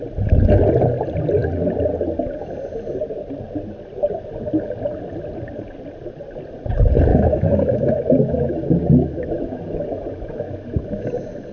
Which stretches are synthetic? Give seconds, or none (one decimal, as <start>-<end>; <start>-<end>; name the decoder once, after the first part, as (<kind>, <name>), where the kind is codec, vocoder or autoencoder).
7.1-11.1 (autoencoder, DAC-VAE)